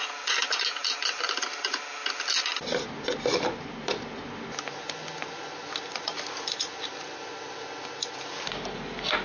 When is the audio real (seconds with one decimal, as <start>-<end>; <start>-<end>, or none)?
0.0-9.2